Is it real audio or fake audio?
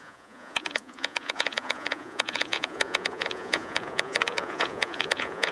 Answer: fake